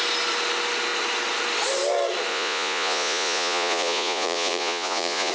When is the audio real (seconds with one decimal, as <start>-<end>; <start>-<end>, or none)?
0.0-2.3